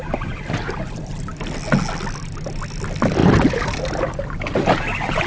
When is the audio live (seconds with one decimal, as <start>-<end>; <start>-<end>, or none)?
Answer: 0.0-5.3